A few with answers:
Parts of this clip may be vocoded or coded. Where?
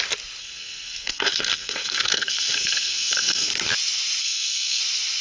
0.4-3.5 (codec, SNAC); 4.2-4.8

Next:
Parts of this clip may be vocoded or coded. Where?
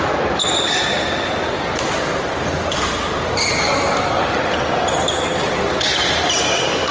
none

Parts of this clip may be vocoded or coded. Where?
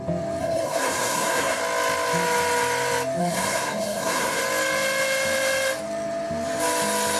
0.4-1.6 (codec, SNAC); 3.2-4.4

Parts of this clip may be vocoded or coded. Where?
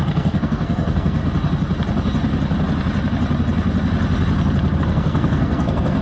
0.0-1.2 (codec, SNAC); 4.8-6.0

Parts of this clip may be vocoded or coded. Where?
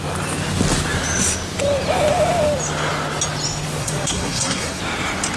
3.8-4.8 (codec, SNAC)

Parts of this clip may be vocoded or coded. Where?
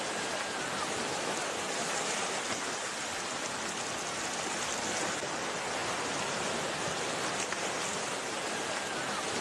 none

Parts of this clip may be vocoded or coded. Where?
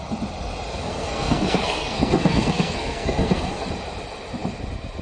0.7-3.7 (codec, SNAC)